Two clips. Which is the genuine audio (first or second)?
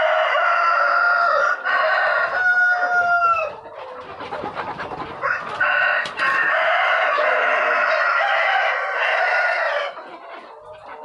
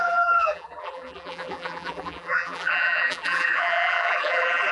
first